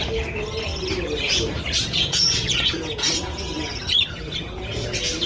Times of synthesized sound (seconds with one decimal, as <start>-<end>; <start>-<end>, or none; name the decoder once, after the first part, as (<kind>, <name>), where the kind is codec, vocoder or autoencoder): 1.8-4.0 (vocoder, Vocos)